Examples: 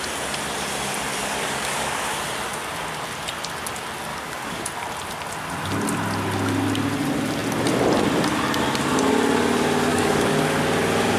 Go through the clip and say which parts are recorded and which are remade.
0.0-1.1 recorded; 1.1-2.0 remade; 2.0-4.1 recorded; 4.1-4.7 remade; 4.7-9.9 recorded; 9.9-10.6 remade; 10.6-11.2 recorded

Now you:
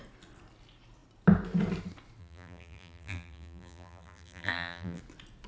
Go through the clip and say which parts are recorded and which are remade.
0.0-2.2 recorded; 2.2-5.0 remade; 5.0-5.5 recorded

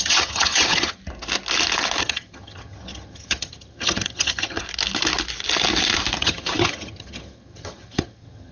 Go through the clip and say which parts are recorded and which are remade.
0.0-1.0 remade; 1.0-2.0 recorded; 2.0-4.6 remade; 4.6-6.2 recorded; 6.2-8.5 remade

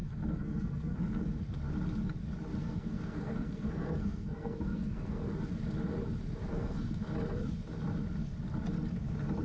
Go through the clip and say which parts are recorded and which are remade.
0.0-1.4 remade; 1.4-2.6 recorded; 2.6-5.2 remade; 5.2-6.5 recorded; 6.5-7.0 remade; 7.0-9.4 recorded

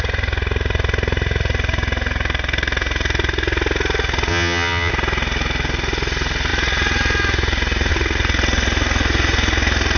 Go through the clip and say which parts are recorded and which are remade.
0.0-4.3 recorded; 4.3-4.9 remade; 4.9-10.0 recorded

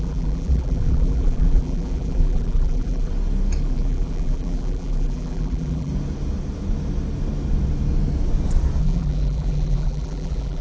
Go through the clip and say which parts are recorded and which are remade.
0.0-3.1 remade; 3.1-3.6 recorded; 3.6-5.9 remade; 5.9-8.8 recorded; 8.8-10.6 remade

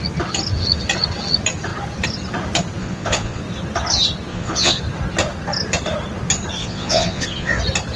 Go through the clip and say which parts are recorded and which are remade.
0.0-2.8 recorded; 2.8-3.4 remade; 3.4-4.3 recorded; 4.3-4.8 remade; 4.8-6.6 recorded; 6.6-7.6 remade; 7.6-8.0 recorded

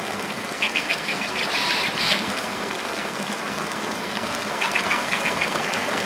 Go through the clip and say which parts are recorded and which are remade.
0.0-1.4 remade; 1.4-2.0 recorded; 2.0-6.1 remade